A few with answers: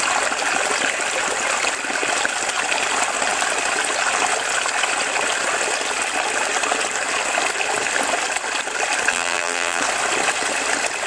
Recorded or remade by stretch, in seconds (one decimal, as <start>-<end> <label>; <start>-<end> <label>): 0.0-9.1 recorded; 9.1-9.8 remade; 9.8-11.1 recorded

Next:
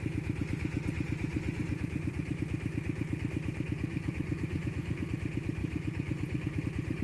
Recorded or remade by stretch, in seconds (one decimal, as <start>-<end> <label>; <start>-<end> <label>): 0.0-1.3 recorded; 1.3-2.4 remade; 2.4-3.9 recorded; 3.9-5.1 remade; 5.1-5.6 recorded; 5.6-6.6 remade; 6.6-7.0 recorded

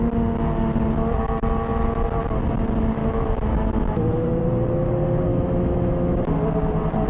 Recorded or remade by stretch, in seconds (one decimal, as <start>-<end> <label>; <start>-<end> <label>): 0.0-3.0 recorded; 3.0-4.4 remade; 4.4-5.3 recorded; 5.3-6.2 remade; 6.2-7.1 recorded

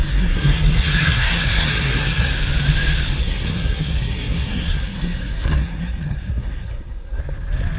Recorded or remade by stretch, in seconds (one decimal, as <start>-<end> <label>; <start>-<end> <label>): 0.0-2.3 remade; 2.3-3.2 recorded; 3.2-7.2 remade; 7.2-7.8 recorded

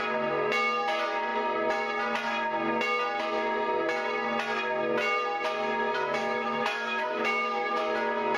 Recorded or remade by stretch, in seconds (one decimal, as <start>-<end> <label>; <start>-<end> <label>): 0.0-6.2 recorded; 6.2-7.8 remade; 7.8-8.4 recorded

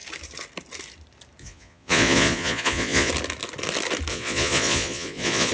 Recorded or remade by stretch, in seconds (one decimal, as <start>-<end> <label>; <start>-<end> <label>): 0.0-1.4 recorded; 1.4-3.1 remade; 3.1-4.1 recorded; 4.1-5.5 remade

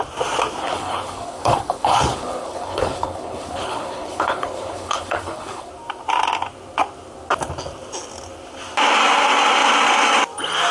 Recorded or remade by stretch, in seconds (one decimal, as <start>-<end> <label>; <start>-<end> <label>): 0.0-0.6 recorded; 0.6-5.7 remade; 5.7-10.7 recorded

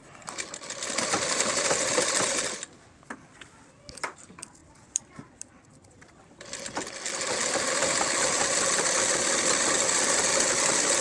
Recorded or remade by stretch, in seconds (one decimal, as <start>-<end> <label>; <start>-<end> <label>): 0.0-4.6 recorded; 4.6-6.6 remade; 6.6-11.0 recorded